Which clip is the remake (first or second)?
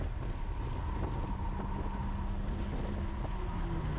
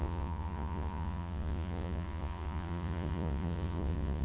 second